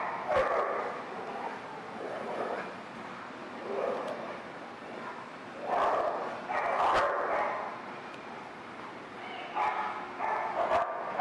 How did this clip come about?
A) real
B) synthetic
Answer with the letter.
A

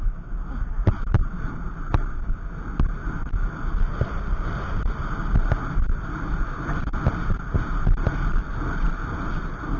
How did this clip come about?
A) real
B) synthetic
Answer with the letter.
A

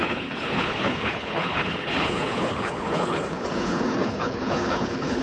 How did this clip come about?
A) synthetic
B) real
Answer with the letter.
A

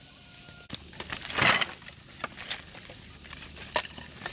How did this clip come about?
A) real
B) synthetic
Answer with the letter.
A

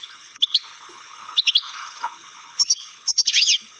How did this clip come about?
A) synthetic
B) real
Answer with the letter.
A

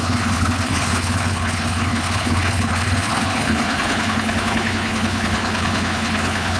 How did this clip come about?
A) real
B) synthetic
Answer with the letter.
B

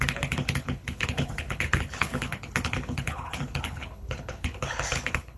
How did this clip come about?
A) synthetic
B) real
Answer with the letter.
A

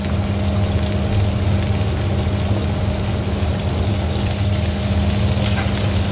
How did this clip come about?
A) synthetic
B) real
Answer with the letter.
B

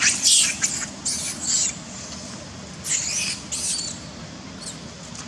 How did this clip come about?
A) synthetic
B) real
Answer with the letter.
B